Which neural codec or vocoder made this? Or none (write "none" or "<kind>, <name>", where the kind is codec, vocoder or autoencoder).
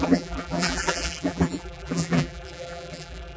vocoder, BigVGAN v2